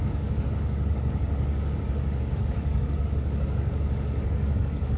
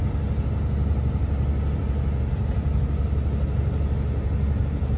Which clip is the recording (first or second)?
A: second